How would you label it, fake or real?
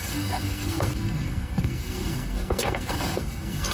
fake